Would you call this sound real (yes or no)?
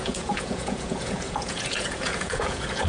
no